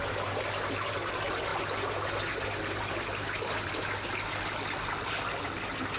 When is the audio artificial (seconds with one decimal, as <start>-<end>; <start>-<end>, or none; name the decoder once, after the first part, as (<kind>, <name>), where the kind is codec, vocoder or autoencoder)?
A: none